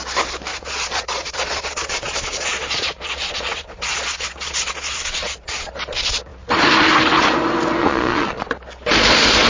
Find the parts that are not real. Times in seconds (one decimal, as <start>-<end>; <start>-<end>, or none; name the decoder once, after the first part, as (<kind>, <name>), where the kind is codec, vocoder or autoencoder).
0.5-5.7 (vocoder, Vocos); 7.8-8.5